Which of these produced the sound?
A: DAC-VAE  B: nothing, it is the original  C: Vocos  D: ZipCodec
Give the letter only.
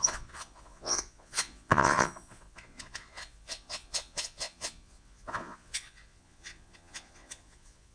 C